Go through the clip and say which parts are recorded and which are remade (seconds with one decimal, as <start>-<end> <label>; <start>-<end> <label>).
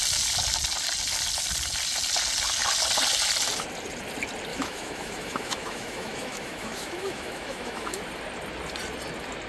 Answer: 0.0-4.5 recorded; 4.5-8.0 remade; 8.0-9.5 recorded